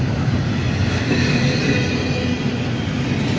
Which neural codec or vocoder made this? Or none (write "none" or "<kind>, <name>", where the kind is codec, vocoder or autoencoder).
none